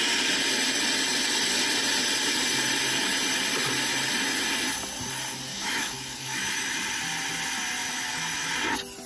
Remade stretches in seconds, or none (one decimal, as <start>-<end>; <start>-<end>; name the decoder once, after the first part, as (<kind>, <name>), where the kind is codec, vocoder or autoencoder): 5.5-6.8 (autoencoder, DAC-VAE); 7.8-8.5